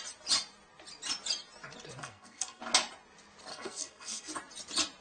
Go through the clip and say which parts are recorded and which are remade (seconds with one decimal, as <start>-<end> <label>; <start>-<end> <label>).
0.0-2.0 recorded; 2.0-2.6 remade; 2.6-3.5 recorded; 3.5-4.3 remade; 4.3-5.0 recorded